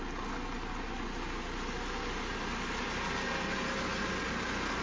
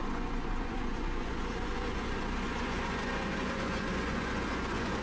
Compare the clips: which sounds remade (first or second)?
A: second